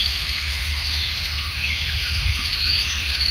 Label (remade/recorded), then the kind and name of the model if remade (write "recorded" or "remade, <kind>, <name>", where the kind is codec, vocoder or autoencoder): remade, autoencoder, DAC-VAE